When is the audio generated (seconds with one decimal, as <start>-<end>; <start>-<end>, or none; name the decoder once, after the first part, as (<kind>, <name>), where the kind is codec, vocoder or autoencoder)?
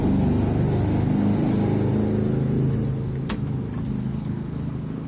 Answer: 4.0-5.1 (codec, HILCodec)